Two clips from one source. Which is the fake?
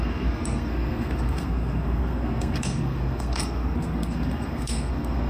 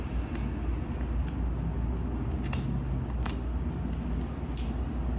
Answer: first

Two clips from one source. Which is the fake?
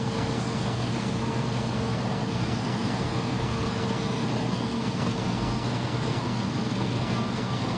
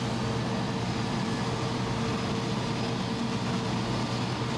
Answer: first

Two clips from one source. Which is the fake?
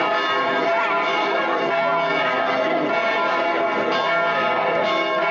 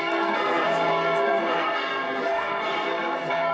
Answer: second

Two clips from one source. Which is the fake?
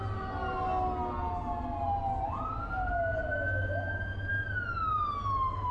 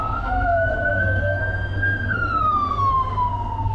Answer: second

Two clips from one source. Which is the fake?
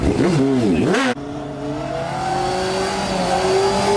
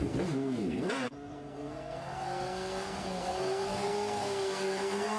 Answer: second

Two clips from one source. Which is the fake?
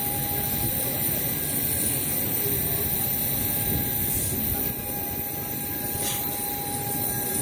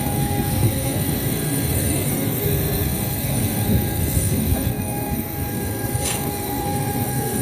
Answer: second